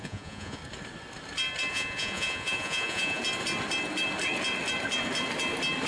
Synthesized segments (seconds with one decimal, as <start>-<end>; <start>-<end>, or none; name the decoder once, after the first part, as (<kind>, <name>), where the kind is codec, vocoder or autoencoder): 0.0-0.6 (vocoder, Vocos); 1.7-3.2